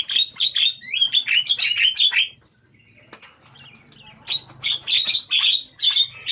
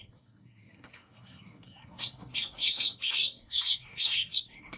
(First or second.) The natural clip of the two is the first